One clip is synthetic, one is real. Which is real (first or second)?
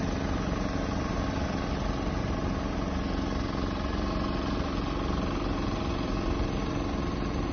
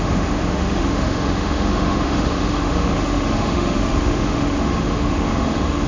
first